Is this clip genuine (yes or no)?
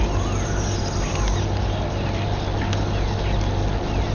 yes